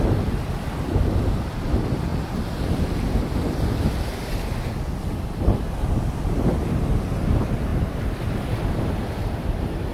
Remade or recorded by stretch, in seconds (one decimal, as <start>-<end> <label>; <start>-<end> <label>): 0.0-9.9 recorded